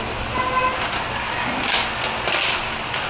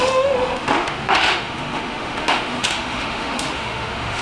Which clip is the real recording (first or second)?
first